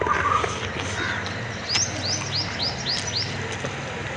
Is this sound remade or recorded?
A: recorded